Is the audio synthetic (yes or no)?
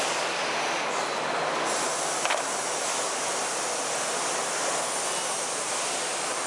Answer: no